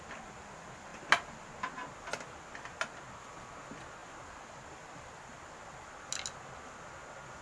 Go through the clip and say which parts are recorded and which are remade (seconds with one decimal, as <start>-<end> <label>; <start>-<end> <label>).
0.0-7.4 recorded